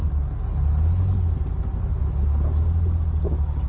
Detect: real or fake real